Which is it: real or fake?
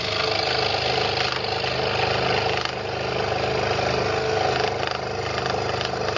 real